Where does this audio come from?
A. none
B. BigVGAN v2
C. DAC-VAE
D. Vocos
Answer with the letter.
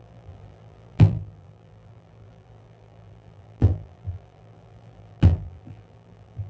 B